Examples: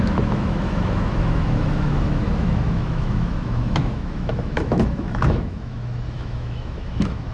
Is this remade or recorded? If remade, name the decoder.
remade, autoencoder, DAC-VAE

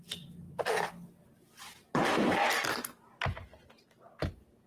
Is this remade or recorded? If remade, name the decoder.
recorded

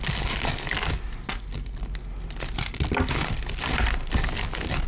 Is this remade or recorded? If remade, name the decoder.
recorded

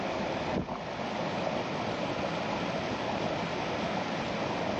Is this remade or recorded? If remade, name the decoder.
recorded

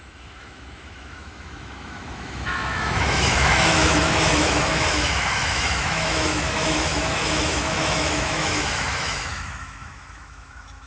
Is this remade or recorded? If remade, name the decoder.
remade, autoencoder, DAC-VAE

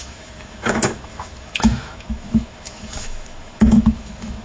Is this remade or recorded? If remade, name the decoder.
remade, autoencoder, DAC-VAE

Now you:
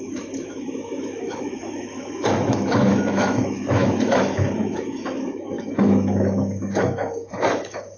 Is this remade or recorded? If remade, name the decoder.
remade, autoencoder, DAC-VAE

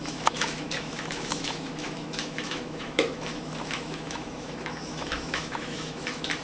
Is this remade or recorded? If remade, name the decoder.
remade, autoencoder, DAC-VAE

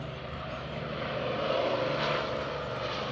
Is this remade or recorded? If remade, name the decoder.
recorded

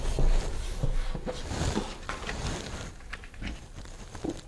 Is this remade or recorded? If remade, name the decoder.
recorded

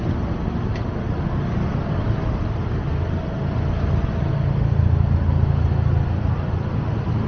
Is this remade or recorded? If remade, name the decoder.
recorded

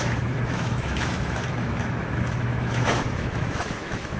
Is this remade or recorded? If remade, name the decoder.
remade, autoencoder, DAC-VAE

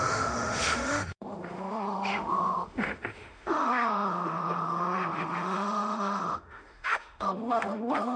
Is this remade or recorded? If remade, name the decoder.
remade, autoencoder, DAC-VAE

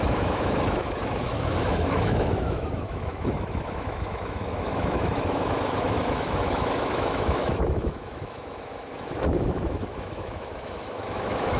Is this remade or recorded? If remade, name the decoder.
remade, autoencoder, DAC-VAE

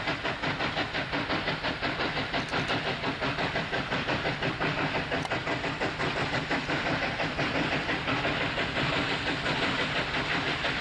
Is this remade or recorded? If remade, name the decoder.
recorded